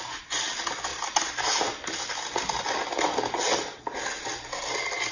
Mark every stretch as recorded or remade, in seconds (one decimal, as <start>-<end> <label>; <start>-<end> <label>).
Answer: 0.0-5.1 recorded